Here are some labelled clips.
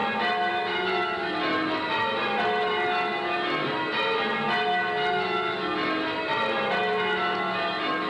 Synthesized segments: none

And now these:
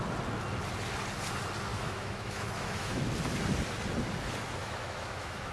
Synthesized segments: 1.7-3.0; 4.6-5.5

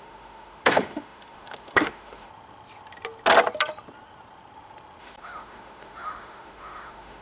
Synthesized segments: 0.0-2.3; 5.0-7.2

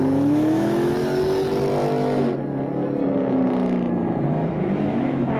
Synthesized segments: 0.0-1.0; 4.2-5.4

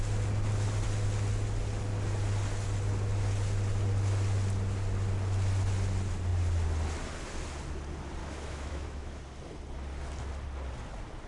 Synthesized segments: 8.2-9.2

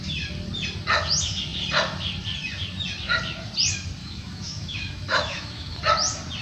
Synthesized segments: 4.0-5.8

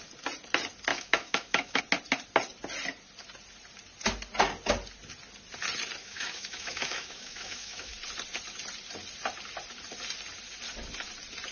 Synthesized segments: 0.9-1.8; 6.0-7.9

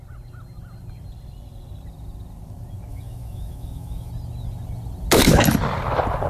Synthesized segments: 2.9-4.1